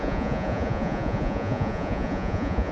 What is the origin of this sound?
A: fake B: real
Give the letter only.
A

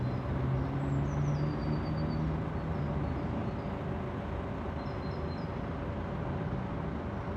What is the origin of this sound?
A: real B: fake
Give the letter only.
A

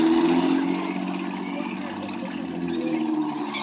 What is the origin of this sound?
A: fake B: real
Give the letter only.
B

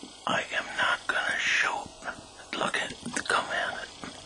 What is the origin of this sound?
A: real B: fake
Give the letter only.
B